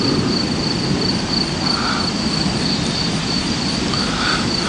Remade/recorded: recorded